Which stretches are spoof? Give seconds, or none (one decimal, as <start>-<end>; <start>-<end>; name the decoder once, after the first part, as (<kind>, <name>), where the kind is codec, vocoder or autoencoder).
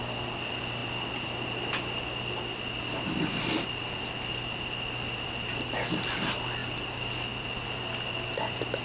none